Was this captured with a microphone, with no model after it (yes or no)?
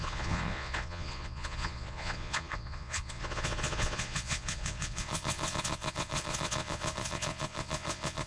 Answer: no